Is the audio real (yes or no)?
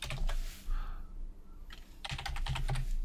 yes